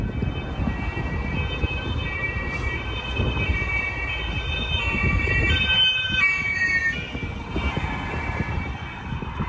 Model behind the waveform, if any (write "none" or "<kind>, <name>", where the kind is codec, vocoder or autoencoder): none